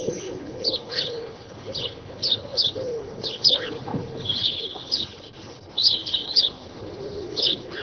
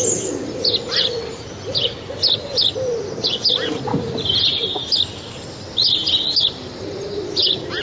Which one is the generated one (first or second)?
first